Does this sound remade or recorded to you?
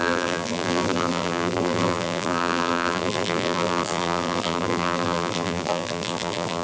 remade